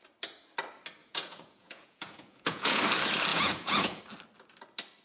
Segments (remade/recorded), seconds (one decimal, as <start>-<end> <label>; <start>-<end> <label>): 0.0-1.0 recorded; 1.0-2.8 remade; 2.8-3.3 recorded; 3.3-4.0 remade; 4.0-5.0 recorded

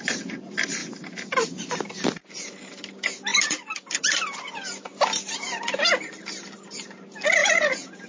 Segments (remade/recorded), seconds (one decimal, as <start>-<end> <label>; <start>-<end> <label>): 0.0-7.4 recorded; 7.4-8.1 remade

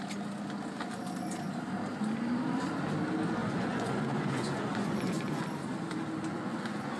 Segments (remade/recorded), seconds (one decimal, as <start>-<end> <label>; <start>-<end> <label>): 0.0-3.4 recorded; 3.4-5.4 remade; 5.4-6.3 recorded; 6.3-7.0 remade

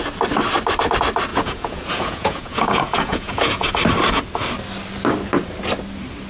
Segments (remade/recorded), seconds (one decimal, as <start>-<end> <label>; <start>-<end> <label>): 0.0-1.3 recorded; 1.3-3.7 remade; 3.7-6.3 recorded

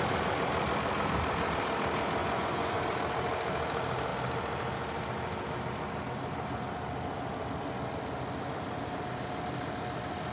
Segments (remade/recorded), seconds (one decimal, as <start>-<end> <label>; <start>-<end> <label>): 0.0-2.2 recorded; 2.2-2.8 remade; 2.8-10.3 recorded

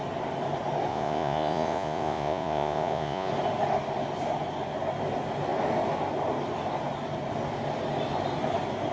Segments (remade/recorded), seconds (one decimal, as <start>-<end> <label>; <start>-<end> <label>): 0.0-0.9 recorded; 0.9-3.3 remade; 3.3-8.9 recorded

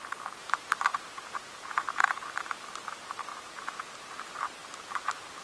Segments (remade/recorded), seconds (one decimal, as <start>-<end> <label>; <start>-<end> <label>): 0.0-0.9 recorded; 0.9-2.3 remade; 2.3-3.3 recorded; 3.3-3.9 remade; 3.9-5.4 recorded

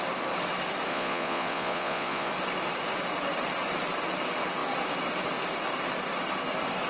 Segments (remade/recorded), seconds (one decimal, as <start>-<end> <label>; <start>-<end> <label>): 0.0-0.9 recorded; 0.9-2.3 remade; 2.3-6.9 recorded